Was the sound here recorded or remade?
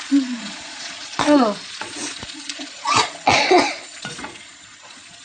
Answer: remade